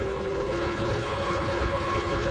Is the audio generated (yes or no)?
yes